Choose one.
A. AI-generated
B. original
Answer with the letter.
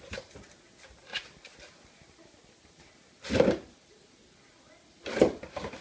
B